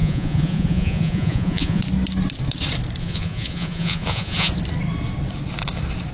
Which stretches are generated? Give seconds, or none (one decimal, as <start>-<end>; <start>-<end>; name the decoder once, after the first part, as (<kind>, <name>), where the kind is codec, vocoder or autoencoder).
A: 0.0-1.8 (vocoder, Vocos); 3.0-4.5